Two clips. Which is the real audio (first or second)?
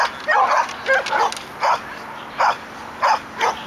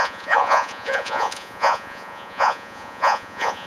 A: first